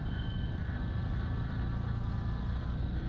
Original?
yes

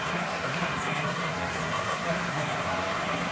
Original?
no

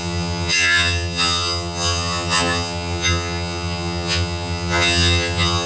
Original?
no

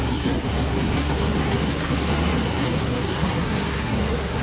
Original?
no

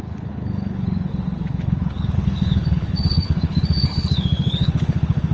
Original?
no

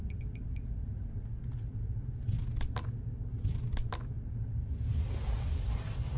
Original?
yes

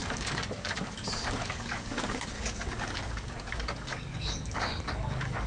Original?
no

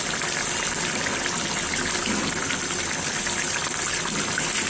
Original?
yes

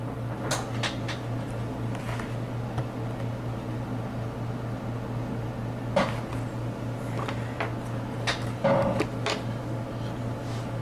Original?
yes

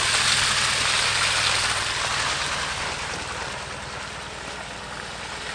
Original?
yes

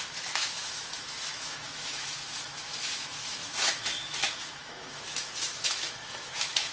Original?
no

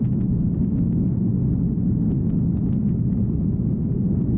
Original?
yes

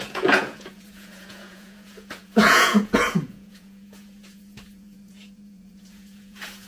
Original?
no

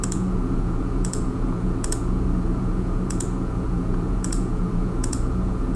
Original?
no